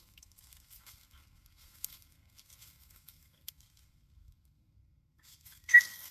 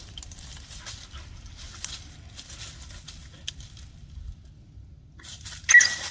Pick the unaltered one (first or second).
second